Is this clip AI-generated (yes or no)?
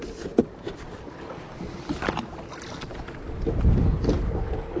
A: no